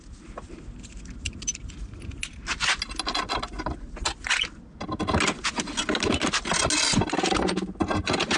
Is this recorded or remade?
recorded